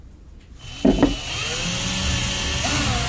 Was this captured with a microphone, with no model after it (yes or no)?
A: yes